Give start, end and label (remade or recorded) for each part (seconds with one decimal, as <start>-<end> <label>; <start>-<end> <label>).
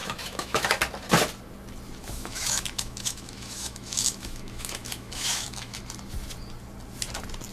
0.0-0.8 remade; 0.8-2.0 recorded; 2.0-5.8 remade; 5.8-7.5 recorded